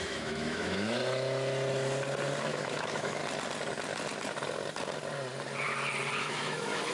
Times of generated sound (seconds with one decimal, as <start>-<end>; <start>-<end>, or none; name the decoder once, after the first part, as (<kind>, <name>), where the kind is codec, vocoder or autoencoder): 0.0-1.0 (autoencoder, DAC-VAE); 2.4-3.2; 6.2-6.9